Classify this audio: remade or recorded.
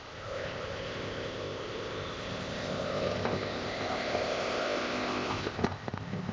remade